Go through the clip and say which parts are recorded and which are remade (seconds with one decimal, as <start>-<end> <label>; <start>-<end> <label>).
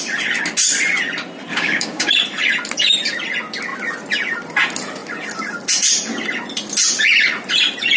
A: 0.0-1.5 recorded; 1.5-2.1 remade; 2.1-8.0 recorded